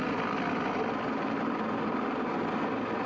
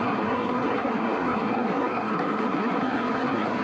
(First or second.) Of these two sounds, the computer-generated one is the second